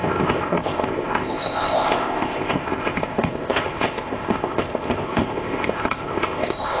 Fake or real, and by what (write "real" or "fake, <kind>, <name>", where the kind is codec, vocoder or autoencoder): fake, codec, ZipCodec